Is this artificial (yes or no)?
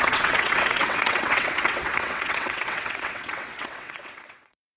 yes